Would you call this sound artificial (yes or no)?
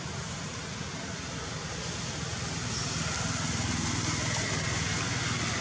no